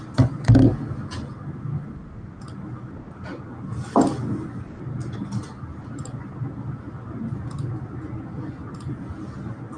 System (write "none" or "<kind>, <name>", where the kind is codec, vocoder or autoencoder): none